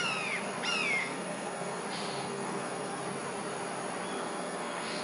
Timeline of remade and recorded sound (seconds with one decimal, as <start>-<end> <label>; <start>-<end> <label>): 0.0-1.0 recorded; 1.0-1.8 remade; 1.8-2.2 recorded; 2.2-3.0 remade; 3.0-4.2 recorded; 4.2-5.0 remade